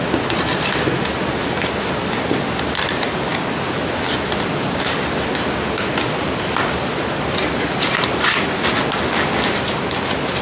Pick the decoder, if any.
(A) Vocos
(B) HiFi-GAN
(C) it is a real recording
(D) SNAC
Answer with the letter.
C